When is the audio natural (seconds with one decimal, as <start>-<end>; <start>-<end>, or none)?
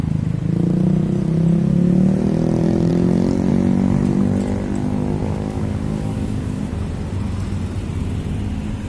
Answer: 0.0-5.2; 6.6-8.9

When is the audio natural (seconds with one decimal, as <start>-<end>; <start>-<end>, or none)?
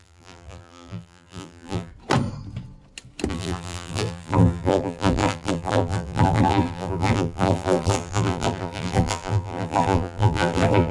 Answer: 1.9-3.3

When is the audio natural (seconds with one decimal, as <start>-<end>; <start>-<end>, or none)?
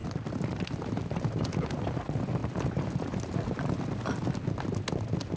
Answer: 0.0-5.4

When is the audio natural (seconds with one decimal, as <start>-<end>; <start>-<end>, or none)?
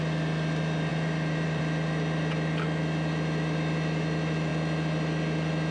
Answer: 0.0-0.9; 1.6-5.7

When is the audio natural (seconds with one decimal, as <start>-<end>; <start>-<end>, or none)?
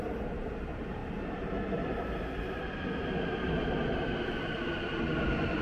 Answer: 0.0-5.6